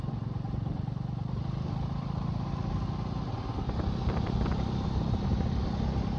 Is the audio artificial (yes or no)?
no